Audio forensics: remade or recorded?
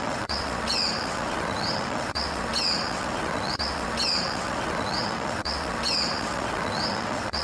remade